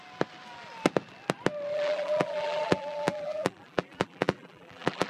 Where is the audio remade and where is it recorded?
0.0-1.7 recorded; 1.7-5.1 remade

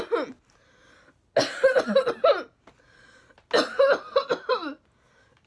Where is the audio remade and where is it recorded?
0.0-5.5 recorded

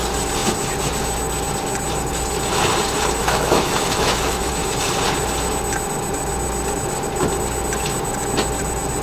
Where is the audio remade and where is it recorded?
0.0-3.2 recorded; 3.2-4.5 remade; 4.5-9.0 recorded

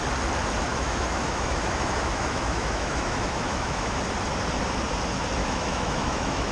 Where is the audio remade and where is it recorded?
0.0-0.7 recorded; 0.7-4.0 remade; 4.0-5.4 recorded; 5.4-6.5 remade